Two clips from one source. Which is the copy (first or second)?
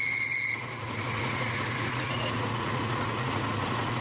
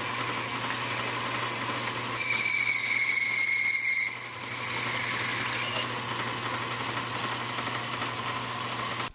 first